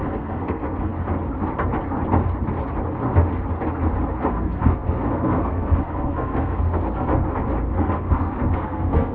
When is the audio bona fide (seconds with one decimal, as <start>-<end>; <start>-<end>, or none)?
0.9-4.3; 7.1-7.9